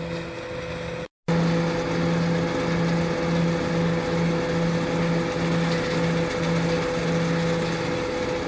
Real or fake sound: real